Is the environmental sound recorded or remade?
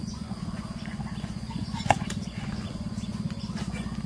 remade